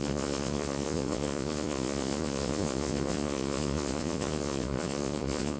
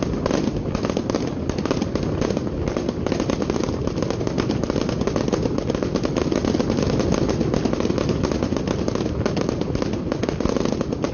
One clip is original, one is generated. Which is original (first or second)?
second